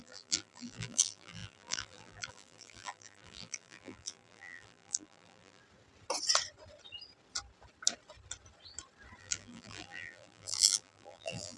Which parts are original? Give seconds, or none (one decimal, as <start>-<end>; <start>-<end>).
5.6-9.2